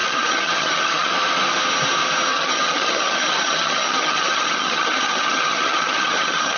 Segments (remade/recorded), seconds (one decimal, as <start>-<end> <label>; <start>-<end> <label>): 0.0-1.1 remade; 1.1-2.3 recorded; 2.3-6.6 remade